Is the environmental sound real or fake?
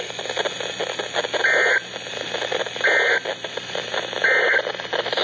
real